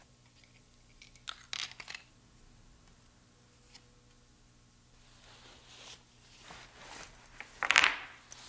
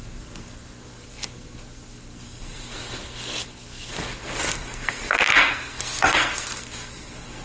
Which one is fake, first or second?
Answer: second